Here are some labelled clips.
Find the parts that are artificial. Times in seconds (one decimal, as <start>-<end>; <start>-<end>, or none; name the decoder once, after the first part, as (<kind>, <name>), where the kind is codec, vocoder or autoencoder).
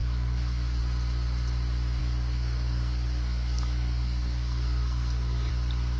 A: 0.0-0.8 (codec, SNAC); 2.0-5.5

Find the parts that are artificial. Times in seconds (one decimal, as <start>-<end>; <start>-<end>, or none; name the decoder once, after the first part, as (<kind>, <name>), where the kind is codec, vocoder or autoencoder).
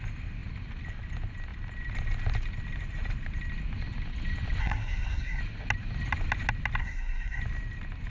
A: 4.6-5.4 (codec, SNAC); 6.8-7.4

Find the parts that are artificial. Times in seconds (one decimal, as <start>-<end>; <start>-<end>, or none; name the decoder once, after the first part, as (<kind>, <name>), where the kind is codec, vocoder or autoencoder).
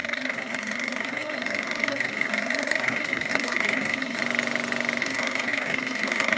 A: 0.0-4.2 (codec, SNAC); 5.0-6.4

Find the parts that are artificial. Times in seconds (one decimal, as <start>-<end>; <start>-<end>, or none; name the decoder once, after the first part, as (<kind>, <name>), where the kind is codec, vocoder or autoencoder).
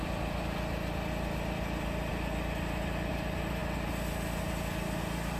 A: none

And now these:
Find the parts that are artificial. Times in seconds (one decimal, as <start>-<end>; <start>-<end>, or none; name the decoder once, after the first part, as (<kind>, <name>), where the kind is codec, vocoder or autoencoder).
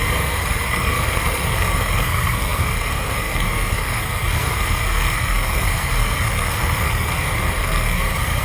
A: 0.0-8.4 (codec, SNAC)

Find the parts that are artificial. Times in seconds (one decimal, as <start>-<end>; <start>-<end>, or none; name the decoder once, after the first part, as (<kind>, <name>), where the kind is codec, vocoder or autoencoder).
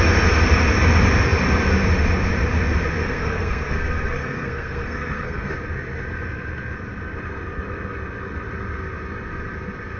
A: 3.0-5.5 (codec, SNAC)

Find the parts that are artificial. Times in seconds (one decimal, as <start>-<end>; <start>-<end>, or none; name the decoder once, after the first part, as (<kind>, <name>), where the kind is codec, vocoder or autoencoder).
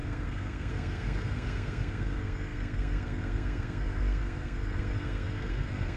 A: 0.0-6.0 (codec, SNAC)